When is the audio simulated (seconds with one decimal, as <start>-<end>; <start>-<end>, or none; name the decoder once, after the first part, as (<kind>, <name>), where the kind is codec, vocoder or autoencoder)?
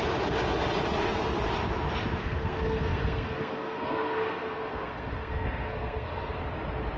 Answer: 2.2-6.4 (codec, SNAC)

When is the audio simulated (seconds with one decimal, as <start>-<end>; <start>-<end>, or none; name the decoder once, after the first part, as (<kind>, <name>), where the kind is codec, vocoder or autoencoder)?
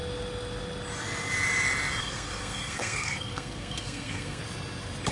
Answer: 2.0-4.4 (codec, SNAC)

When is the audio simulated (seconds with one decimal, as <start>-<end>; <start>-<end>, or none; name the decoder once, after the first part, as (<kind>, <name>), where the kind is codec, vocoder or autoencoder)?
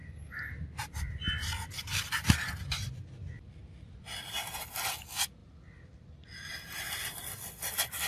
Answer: none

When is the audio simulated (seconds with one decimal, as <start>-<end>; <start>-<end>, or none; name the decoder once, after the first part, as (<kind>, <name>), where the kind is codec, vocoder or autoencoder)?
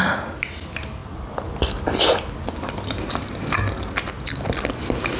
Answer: none